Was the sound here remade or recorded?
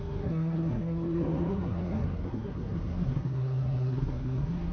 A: remade